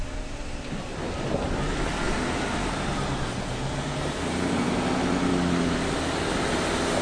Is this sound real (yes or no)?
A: yes